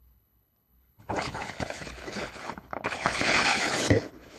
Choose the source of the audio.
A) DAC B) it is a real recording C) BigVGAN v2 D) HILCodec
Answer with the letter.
D